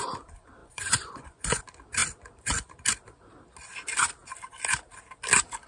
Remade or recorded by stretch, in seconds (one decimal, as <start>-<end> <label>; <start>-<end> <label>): 0.0-0.6 recorded; 0.6-1.6 remade; 1.6-5.7 recorded